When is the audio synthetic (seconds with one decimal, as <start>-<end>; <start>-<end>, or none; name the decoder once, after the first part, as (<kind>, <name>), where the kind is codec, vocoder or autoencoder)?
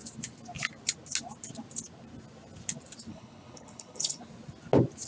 3.1-4.2 (codec, HILCodec)